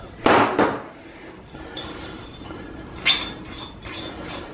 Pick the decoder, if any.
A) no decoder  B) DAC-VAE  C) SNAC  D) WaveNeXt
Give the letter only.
A